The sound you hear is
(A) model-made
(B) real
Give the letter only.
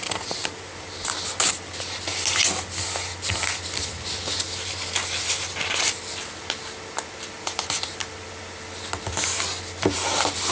B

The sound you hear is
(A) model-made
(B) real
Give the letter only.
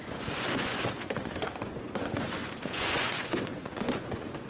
A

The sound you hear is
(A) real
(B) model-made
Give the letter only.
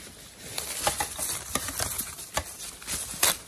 A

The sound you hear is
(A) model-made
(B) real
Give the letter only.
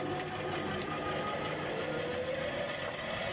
B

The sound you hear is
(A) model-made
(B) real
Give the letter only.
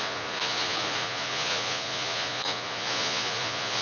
A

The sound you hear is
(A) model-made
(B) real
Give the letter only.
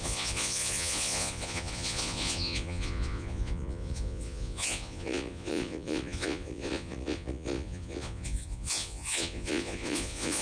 A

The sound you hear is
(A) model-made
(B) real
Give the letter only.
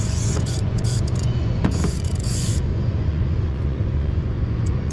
A